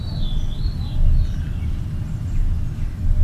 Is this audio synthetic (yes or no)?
no